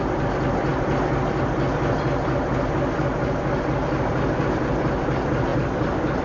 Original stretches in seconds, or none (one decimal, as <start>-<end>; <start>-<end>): 0.0-6.2